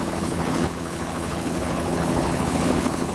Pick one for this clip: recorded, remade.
remade